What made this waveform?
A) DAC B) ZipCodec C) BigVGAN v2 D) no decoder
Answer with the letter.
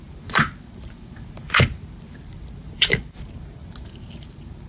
C